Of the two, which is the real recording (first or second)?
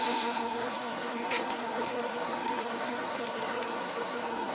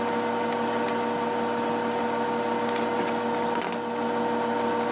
second